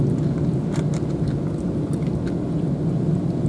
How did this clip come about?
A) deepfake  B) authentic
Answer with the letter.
B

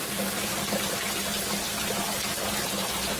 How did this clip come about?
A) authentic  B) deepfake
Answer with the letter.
A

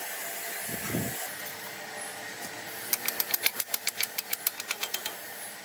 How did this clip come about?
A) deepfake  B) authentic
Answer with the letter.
B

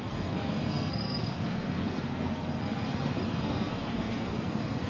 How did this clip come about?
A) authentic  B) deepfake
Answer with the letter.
B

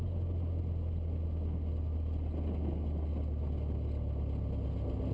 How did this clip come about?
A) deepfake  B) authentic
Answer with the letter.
B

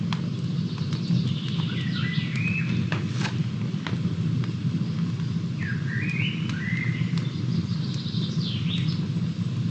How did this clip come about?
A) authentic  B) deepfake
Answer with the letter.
A